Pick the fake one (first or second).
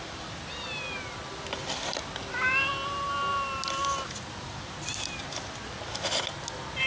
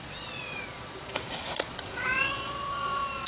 second